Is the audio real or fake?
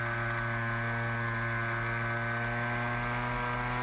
real